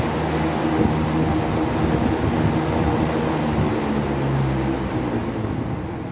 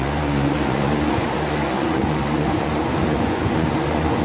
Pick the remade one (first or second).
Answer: second